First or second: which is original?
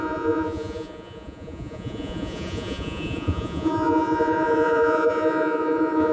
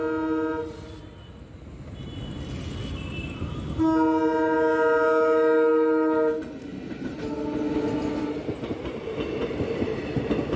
second